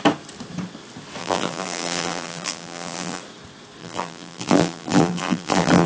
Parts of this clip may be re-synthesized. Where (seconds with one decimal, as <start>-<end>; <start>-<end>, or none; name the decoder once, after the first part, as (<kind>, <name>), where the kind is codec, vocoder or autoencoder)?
1.2-3.2 (vocoder, BigVGAN v2); 3.8-5.9